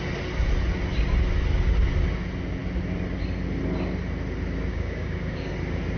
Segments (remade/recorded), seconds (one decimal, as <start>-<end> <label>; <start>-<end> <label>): 0.0-4.7 recorded; 4.7-5.5 remade; 5.5-6.0 recorded